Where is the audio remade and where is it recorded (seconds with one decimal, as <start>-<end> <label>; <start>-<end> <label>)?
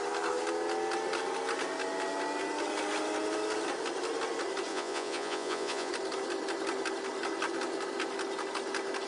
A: 0.0-4.7 recorded; 4.7-5.9 remade; 5.9-9.1 recorded